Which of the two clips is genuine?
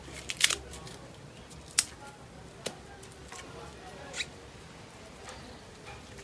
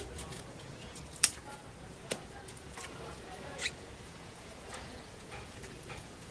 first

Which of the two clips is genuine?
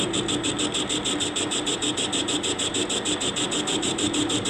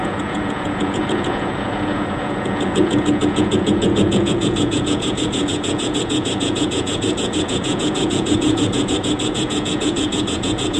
first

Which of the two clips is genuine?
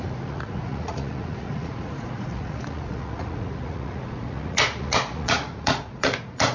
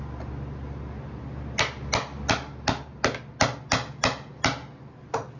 second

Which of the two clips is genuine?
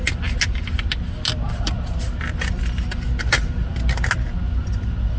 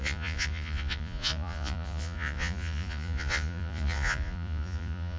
first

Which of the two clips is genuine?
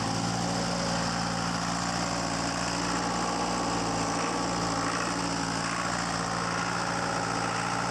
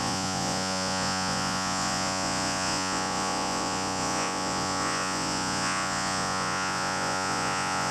first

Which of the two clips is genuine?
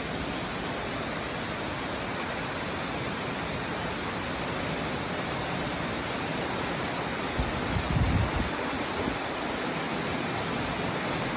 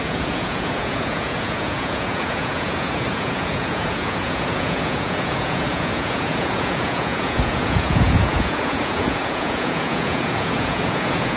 first